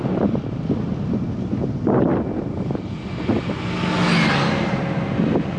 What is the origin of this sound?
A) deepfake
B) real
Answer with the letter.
B